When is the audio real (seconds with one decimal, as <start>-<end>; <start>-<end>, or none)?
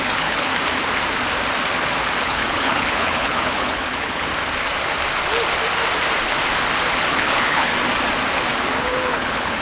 0.5-2.2; 4.3-7.0; 7.7-8.8